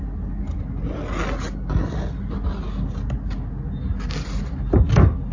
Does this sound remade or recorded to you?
recorded